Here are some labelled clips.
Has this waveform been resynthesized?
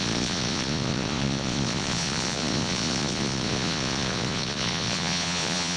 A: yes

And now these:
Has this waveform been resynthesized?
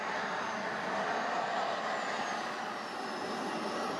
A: no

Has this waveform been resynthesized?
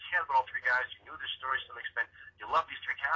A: no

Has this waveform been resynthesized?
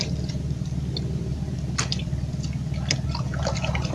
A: no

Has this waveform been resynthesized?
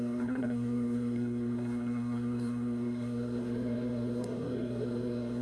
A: yes